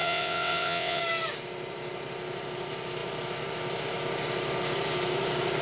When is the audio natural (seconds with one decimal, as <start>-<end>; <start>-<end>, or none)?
1.0-5.6